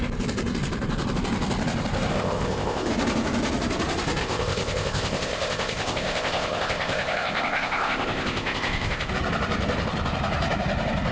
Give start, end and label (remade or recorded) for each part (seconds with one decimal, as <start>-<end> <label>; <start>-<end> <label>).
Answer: 0.0-2.1 recorded; 2.1-2.9 remade; 2.9-4.2 recorded; 4.2-9.1 remade; 9.1-11.1 recorded